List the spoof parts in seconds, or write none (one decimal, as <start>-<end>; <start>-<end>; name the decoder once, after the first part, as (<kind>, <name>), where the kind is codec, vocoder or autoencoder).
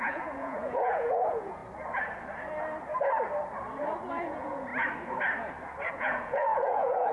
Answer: 0.0-1.6 (vocoder, Vocos); 4.2-4.7; 5.9-7.1